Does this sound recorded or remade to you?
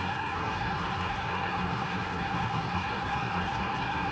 remade